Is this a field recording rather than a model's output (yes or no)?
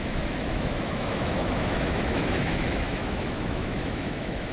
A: no